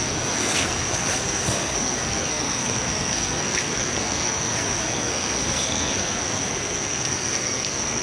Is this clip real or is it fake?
fake